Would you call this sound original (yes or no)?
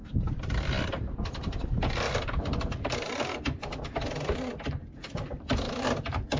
yes